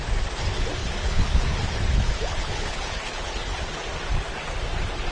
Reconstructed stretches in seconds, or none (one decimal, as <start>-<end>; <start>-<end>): 0.8-3.5